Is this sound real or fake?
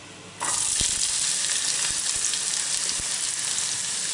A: real